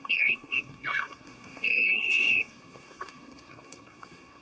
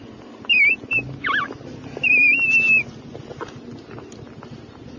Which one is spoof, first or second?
first